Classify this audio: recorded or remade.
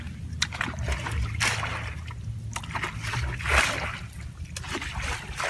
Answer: recorded